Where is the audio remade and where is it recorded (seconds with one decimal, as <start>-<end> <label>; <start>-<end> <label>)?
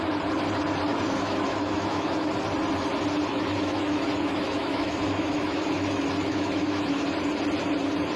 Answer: 0.0-0.9 recorded; 0.9-2.3 remade; 2.3-3.3 recorded; 3.3-7.0 remade; 7.0-8.2 recorded